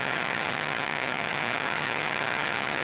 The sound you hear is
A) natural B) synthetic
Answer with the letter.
B